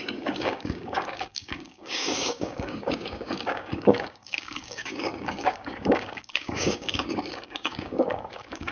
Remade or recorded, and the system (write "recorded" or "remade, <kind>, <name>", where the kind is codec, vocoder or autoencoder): remade, codec, DAC